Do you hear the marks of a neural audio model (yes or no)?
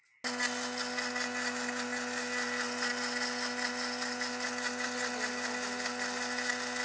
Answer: no